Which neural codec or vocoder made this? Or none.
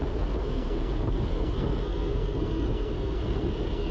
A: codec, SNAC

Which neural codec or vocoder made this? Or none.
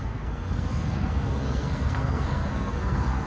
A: codec, SNAC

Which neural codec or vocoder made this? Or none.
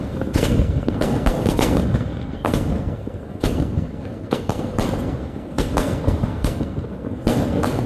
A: codec, SNAC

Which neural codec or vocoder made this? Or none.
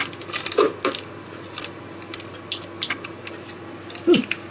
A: none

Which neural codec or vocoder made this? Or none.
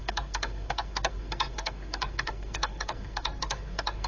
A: codec, SNAC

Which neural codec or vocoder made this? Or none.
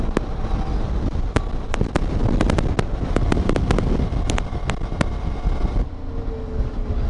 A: none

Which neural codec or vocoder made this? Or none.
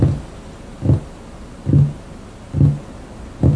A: none